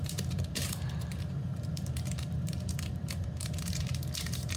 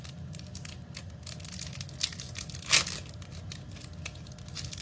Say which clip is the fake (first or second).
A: first